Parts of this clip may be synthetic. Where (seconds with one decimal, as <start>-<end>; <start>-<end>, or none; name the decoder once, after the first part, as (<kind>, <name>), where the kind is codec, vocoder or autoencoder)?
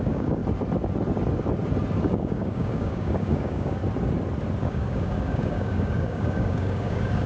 0.0-0.4 (codec, DAC); 2.0-3.8; 4.6-7.3